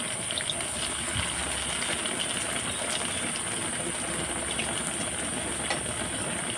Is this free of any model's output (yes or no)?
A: yes